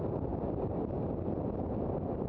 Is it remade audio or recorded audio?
recorded